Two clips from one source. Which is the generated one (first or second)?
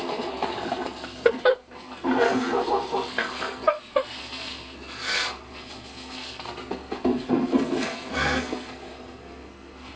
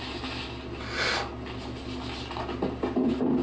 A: first